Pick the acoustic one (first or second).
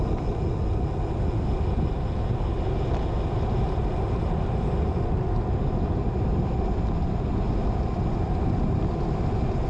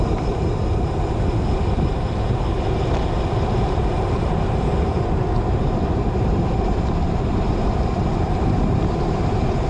first